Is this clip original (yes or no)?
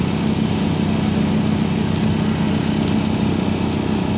yes